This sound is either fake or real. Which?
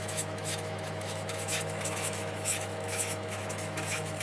fake